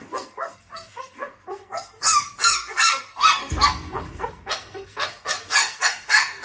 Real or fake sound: fake